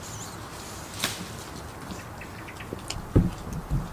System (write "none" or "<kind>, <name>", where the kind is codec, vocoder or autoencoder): none